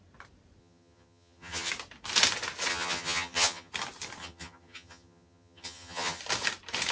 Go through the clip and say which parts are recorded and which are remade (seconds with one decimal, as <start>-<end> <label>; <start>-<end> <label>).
0.0-0.6 recorded; 0.6-1.7 remade; 1.7-2.7 recorded; 2.7-3.7 remade; 3.7-4.2 recorded; 4.2-6.2 remade; 6.2-6.9 recorded